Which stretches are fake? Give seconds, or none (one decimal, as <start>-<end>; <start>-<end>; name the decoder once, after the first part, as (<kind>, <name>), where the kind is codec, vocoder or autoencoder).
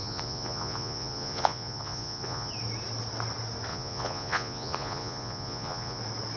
0.0-2.5 (vocoder, Vocos); 3.7-6.0